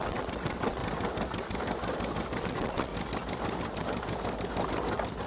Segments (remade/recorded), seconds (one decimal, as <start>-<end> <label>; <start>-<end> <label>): 0.0-0.8 remade; 0.8-2.4 recorded; 2.4-2.9 remade; 2.9-5.3 recorded